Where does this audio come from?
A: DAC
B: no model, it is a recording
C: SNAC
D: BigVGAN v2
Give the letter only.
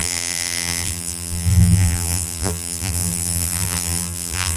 D